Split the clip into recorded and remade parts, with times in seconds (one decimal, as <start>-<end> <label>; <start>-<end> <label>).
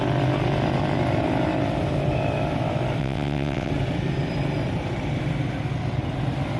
0.0-3.0 recorded; 3.0-3.7 remade; 3.7-6.6 recorded